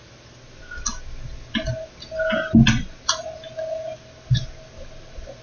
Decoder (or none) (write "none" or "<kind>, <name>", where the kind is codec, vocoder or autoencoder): none